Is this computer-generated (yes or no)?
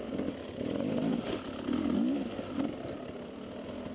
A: no